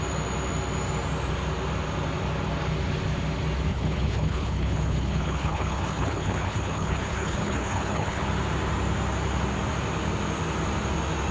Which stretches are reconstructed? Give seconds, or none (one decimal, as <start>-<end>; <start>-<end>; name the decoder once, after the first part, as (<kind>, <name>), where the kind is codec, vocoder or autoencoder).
3.7-8.2 (codec, HILCodec)